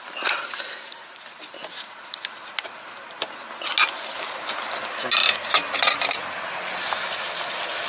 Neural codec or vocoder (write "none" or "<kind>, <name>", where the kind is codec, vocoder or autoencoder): none